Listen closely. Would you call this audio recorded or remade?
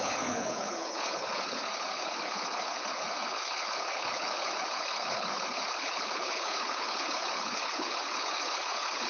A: remade